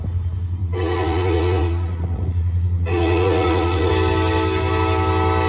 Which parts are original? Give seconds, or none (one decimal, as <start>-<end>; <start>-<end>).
0.0-0.6; 3.9-5.5